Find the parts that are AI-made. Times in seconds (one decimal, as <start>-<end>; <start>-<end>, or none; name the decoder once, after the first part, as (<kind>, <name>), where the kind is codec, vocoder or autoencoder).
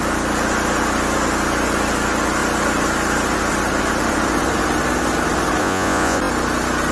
5.6-6.2 (vocoder, Vocos)